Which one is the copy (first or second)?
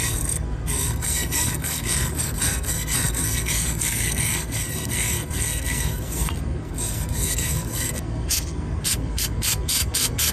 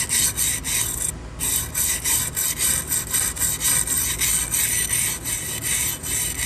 first